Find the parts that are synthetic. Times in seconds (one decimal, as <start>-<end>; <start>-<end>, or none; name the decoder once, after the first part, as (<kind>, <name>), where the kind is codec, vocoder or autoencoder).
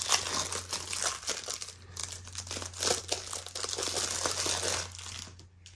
none